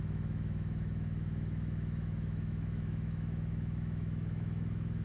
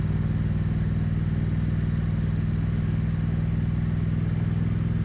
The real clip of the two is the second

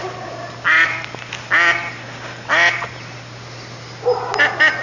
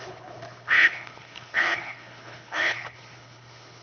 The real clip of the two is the first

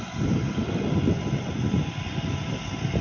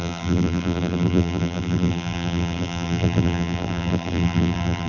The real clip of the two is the first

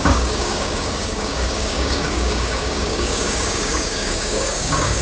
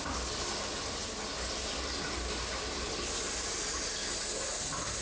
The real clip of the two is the second